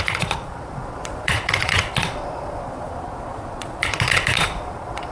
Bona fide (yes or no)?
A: no